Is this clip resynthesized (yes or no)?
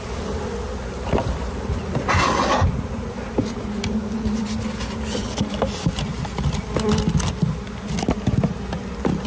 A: no